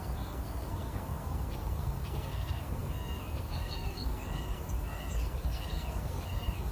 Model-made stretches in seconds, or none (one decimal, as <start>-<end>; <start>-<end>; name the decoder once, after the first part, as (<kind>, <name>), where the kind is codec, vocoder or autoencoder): 0.0-6.7 (codec, SNAC)